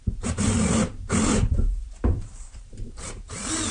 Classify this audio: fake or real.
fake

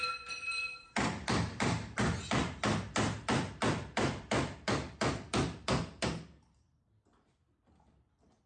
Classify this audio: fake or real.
fake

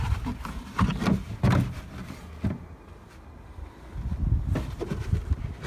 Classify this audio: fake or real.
real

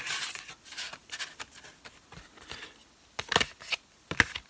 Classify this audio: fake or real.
real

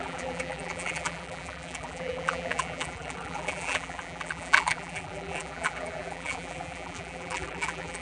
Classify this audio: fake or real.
fake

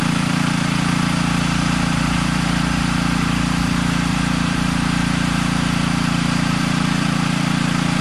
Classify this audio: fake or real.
fake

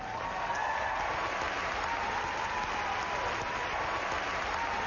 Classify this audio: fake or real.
real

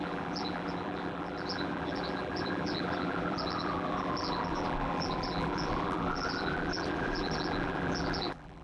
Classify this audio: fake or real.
fake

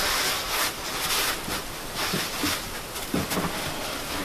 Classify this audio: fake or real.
real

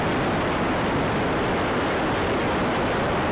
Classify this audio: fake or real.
real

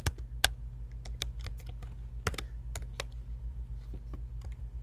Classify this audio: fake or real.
real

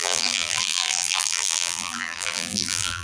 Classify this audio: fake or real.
fake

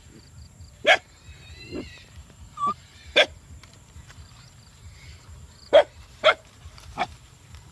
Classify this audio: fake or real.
fake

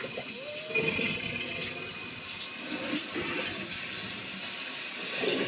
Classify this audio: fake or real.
real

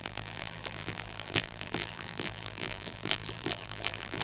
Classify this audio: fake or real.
fake